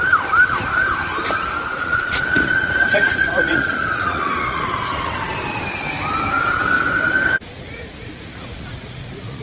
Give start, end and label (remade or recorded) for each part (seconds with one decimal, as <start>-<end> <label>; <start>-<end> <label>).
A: 0.0-1.7 recorded; 1.7-5.2 remade; 5.2-7.5 recorded; 7.5-9.4 remade